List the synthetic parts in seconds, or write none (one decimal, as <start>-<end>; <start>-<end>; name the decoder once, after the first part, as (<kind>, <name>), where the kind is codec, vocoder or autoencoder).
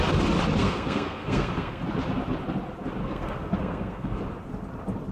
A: 0.6-1.8 (codec, SNAC); 3.0-4.2